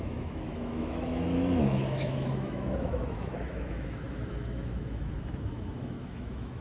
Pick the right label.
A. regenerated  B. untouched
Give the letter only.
A